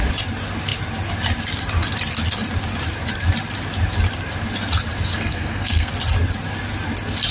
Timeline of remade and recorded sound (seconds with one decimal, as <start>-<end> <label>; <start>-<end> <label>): 0.0-5.1 recorded; 5.1-5.9 remade; 5.9-7.3 recorded